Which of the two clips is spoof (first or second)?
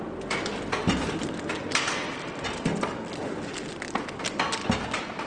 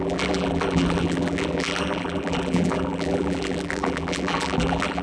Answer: second